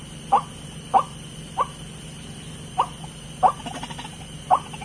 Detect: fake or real real